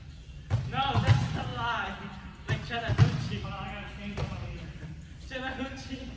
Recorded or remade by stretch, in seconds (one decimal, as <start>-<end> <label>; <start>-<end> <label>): 0.0-1.5 recorded; 1.5-5.2 remade; 5.2-6.2 recorded